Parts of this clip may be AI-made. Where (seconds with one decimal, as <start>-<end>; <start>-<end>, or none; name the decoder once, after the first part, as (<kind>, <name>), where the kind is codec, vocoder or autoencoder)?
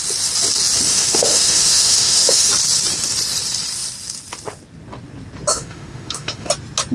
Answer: 0.9-2.5 (autoencoder, DAC-VAE); 5.5-6.5